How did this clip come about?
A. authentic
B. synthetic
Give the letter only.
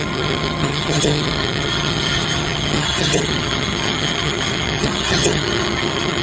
B